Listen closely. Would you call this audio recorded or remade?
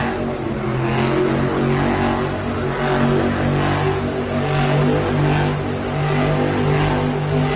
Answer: recorded